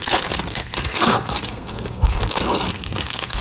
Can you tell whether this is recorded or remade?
remade